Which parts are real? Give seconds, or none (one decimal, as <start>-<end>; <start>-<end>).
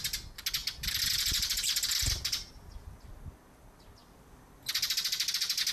0.0-0.6; 3.1-4.0; 5.3-5.7